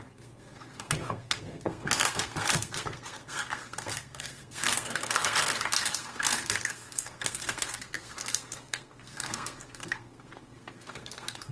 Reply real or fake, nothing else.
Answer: fake